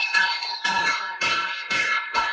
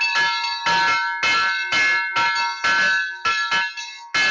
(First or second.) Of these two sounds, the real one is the second